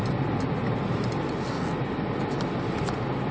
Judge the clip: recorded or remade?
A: recorded